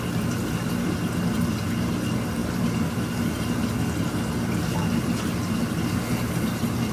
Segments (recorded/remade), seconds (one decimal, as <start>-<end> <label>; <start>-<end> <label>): 0.0-2.4 recorded; 2.4-2.9 remade; 2.9-6.9 recorded

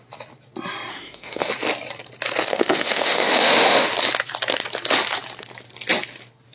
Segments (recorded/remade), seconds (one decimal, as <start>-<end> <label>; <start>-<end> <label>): 0.0-0.9 recorded; 0.9-1.5 remade; 1.5-2.5 recorded; 2.5-3.9 remade; 3.9-6.5 recorded

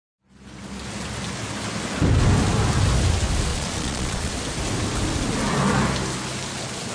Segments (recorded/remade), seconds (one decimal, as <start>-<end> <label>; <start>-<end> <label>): 0.0-3.5 recorded; 3.5-4.3 remade; 4.3-6.9 recorded

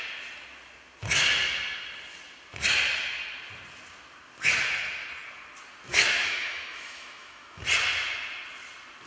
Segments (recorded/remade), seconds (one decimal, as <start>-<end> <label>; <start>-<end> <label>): 0.0-5.9 recorded; 5.9-7.6 remade; 7.6-9.1 recorded

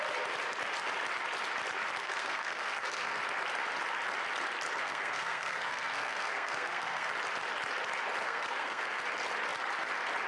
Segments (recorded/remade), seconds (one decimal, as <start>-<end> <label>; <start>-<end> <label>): 0.0-2.0 recorded; 2.0-3.2 remade; 3.2-4.8 recorded; 4.8-7.1 remade; 7.1-8.2 recorded; 8.2-9.0 remade; 9.0-10.3 recorded

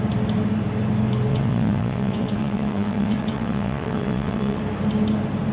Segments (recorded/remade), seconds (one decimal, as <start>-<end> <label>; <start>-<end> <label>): 0.0-1.3 recorded; 1.3-4.6 remade; 4.6-5.5 recorded

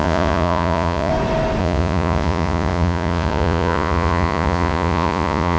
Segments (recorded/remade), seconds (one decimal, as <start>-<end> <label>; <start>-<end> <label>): 0.0-1.1 remade; 1.1-1.6 recorded; 1.6-5.6 remade

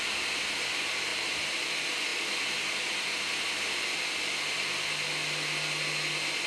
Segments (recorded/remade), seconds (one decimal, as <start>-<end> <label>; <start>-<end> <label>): 0.0-1.1 recorded; 1.1-1.7 remade; 1.7-6.5 recorded